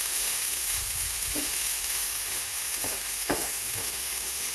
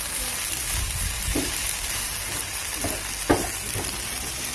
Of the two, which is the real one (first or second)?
second